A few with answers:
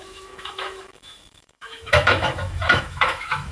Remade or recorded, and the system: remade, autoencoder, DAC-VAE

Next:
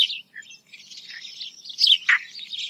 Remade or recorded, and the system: recorded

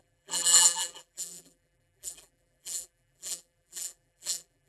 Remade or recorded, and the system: remade, vocoder, BigVGAN v2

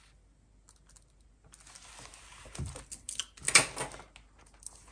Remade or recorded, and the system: recorded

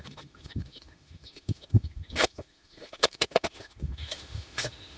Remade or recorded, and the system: remade, autoencoder, DAC-VAE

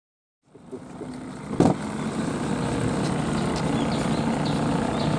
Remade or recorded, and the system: recorded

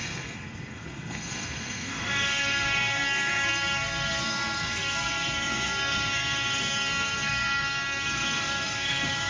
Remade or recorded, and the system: remade, codec, SNAC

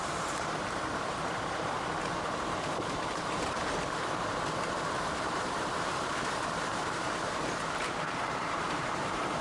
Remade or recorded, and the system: remade, vocoder, BigVGAN v2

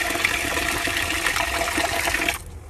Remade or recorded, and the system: recorded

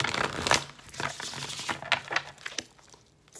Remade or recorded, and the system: recorded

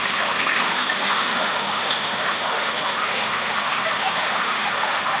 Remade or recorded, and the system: remade, autoencoder, DAC-VAE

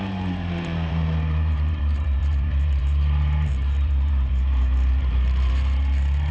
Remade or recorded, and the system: remade, vocoder, BigVGAN v2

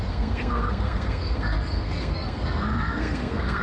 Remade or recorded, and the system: remade, codec, SNAC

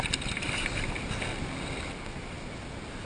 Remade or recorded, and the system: recorded